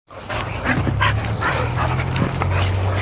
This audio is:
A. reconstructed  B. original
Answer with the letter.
A